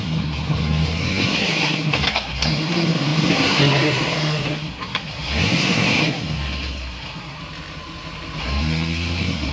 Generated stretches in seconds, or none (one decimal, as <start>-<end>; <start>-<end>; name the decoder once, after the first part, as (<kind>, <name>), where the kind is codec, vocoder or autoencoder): 0.0-7.4 (codec, SNAC); 8.4-9.5